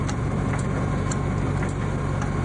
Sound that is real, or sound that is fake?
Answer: real